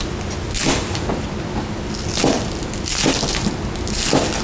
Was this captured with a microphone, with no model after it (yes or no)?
yes